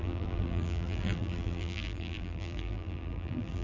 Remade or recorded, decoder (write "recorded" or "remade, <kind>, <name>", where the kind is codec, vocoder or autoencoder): remade, vocoder, BigVGAN v2